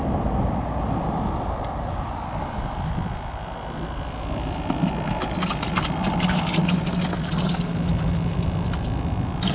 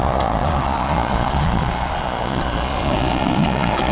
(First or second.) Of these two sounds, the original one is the first